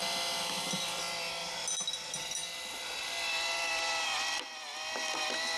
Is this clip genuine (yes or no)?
yes